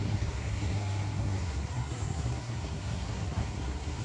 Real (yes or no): no